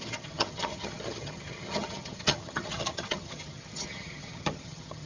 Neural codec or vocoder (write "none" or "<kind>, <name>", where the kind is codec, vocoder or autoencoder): vocoder, HiFi-GAN